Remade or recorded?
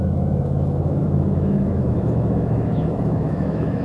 remade